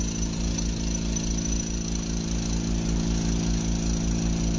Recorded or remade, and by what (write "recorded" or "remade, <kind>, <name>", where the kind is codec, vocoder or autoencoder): recorded